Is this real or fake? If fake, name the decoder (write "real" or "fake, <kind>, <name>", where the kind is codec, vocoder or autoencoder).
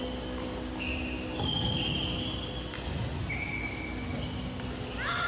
real